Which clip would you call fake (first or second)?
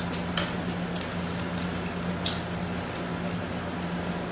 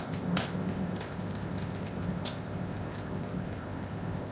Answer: second